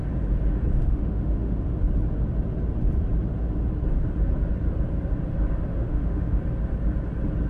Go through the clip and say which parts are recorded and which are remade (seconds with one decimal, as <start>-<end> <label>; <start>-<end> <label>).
0.0-0.7 recorded; 0.7-1.8 remade; 1.8-5.7 recorded; 5.7-6.4 remade; 6.4-7.5 recorded